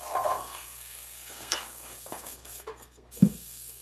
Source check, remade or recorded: remade